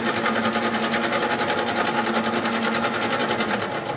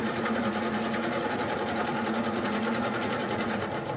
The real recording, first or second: first